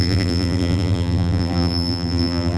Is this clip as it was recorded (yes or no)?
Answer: no